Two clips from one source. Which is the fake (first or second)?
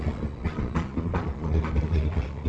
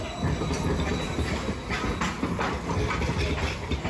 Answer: first